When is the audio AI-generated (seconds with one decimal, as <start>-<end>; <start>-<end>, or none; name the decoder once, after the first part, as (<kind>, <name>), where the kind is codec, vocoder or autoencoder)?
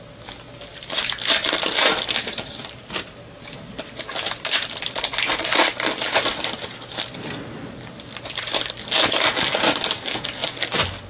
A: none